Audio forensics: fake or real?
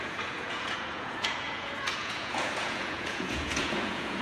fake